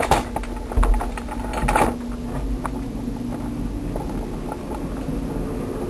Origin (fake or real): real